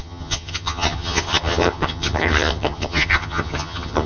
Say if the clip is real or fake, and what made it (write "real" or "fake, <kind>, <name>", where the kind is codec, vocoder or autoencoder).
fake, vocoder, HiFi-GAN